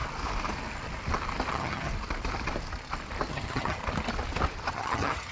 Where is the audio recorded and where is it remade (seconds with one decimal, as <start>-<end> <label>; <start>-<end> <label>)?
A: 0.0-1.5 recorded; 1.5-1.9 remade; 1.9-3.3 recorded; 3.3-3.8 remade; 3.8-4.7 recorded; 4.7-5.3 remade